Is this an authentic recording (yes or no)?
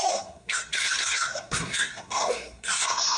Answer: no